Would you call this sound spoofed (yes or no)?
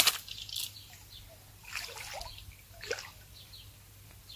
no